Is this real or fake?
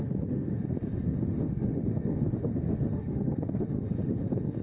fake